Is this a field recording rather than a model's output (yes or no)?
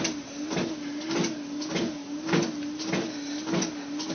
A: yes